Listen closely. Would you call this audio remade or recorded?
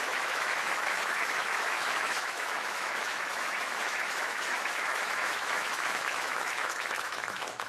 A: remade